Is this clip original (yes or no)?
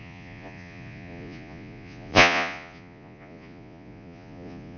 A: no